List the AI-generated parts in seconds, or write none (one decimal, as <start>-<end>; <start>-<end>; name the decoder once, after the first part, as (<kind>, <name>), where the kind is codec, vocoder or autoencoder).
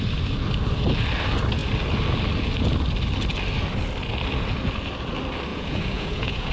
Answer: 5.5-6.5 (vocoder, Vocos)